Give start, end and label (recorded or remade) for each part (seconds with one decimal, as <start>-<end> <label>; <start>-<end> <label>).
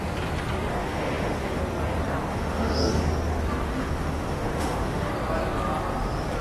0.0-0.7 recorded; 0.7-1.6 remade; 1.6-2.3 recorded; 2.3-3.1 remade; 3.1-3.8 recorded; 3.8-5.1 remade; 5.1-6.4 recorded